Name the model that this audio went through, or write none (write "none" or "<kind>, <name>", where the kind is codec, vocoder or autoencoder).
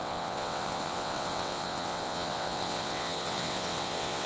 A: vocoder, WaveNeXt